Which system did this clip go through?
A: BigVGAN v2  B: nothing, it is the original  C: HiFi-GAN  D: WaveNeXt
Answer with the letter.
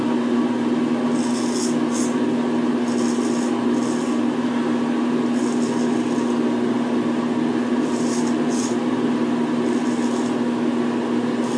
B